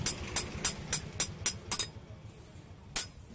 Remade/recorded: recorded